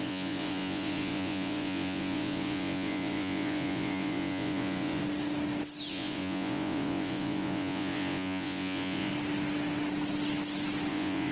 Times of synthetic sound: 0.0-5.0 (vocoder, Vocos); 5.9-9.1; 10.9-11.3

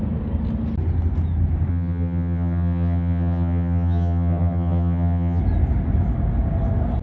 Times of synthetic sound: 1.7-5.4 (vocoder, HiFi-GAN)

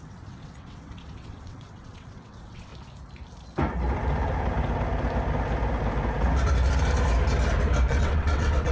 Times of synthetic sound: 0.0-2.7 (vocoder, WaveNeXt); 7.9-8.7